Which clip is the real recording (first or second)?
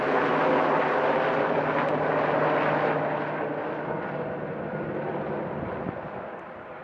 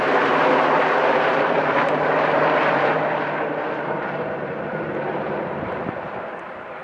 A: first